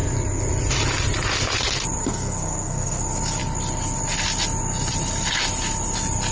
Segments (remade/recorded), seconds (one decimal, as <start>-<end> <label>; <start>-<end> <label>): 0.0-2.0 recorded; 2.0-3.0 remade; 3.0-6.3 recorded